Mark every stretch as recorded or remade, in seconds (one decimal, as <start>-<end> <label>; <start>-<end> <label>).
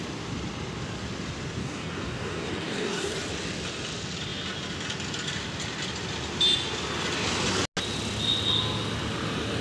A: 0.0-1.6 recorded; 1.6-3.1 remade; 3.1-9.6 recorded